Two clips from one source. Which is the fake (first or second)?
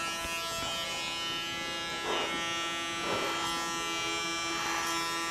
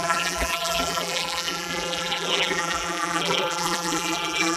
second